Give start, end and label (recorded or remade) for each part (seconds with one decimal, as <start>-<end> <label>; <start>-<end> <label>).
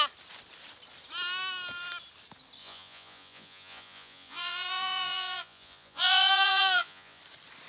0.0-2.6 recorded; 2.6-7.2 remade; 7.2-7.7 recorded